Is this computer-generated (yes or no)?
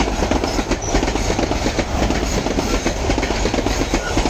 no